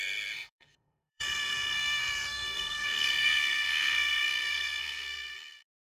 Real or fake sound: fake